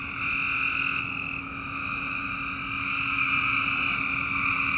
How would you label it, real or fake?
real